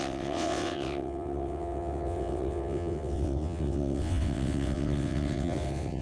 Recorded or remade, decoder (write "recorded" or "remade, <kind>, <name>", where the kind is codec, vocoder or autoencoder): remade, vocoder, WaveNeXt